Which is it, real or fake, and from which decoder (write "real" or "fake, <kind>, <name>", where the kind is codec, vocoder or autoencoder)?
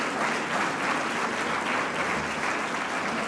real